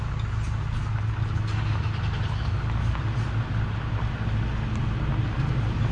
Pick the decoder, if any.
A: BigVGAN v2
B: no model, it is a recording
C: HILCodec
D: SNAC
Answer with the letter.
B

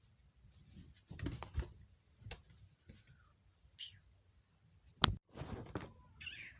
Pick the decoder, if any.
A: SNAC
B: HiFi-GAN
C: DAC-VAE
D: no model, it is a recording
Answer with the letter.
D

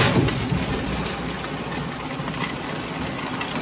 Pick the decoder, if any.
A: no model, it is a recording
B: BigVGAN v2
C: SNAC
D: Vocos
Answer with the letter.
A